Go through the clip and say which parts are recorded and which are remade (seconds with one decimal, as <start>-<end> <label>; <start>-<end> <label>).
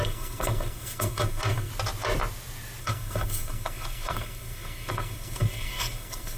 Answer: 0.0-1.7 remade; 1.7-2.8 recorded; 2.8-6.4 remade